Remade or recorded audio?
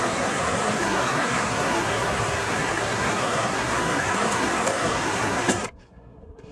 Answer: remade